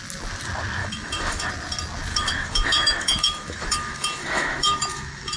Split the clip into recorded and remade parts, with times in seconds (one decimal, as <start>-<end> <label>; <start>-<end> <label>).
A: 0.0-0.8 recorded; 0.8-1.5 remade; 1.5-2.1 recorded; 2.1-5.4 remade